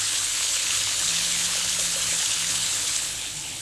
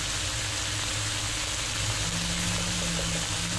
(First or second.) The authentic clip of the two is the second